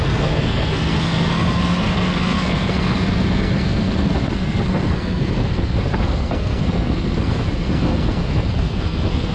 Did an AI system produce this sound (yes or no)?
yes